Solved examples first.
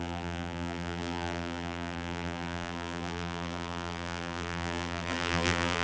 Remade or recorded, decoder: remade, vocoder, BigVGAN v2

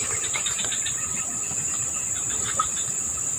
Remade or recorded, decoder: remade, vocoder, BigVGAN v2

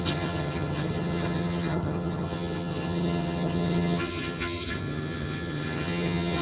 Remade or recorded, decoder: remade, vocoder, HiFi-GAN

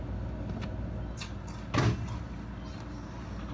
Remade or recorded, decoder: recorded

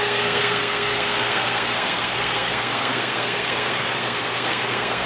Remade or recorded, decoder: remade, codec, SNAC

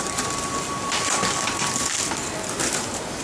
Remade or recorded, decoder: remade, vocoder, BigVGAN v2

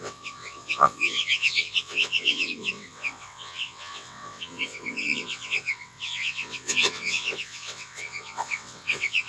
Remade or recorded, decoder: remade, vocoder, WaveNeXt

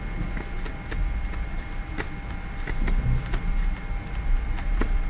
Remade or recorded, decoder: recorded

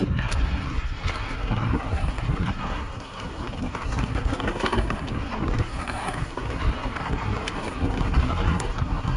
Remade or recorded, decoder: remade, codec, SNAC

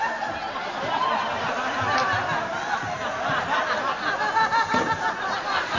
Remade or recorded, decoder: recorded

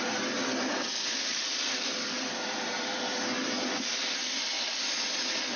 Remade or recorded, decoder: remade, vocoder, BigVGAN v2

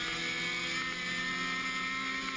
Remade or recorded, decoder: recorded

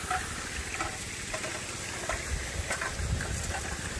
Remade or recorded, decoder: recorded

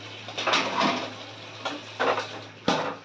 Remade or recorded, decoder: recorded